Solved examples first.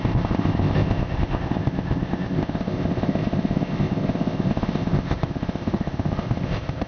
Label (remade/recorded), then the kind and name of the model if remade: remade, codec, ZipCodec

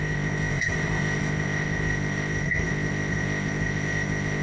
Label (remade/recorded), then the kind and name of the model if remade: remade, codec, ZipCodec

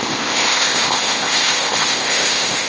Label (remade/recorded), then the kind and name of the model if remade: remade, codec, ZipCodec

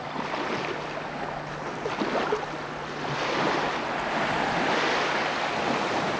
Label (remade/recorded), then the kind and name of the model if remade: recorded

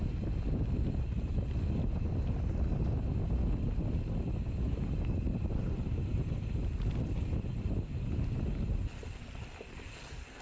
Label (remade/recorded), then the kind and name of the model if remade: recorded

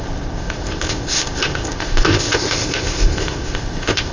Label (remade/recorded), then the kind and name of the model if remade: remade, codec, ZipCodec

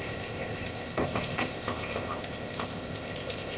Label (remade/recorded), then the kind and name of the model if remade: remade, codec, ZipCodec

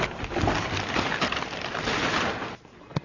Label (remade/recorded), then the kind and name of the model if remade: recorded